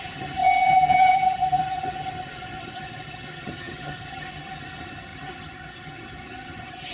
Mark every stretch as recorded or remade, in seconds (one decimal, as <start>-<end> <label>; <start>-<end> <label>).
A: 0.0-6.9 remade